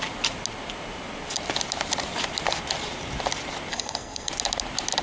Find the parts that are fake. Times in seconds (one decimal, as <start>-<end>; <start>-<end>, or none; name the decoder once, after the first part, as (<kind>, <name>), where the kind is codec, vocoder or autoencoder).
3.7-4.3 (codec, SNAC)